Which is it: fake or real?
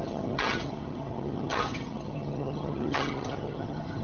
fake